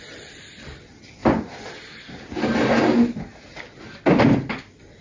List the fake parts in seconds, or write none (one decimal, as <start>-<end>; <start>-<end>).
none